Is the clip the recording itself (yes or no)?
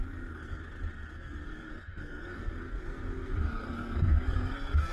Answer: no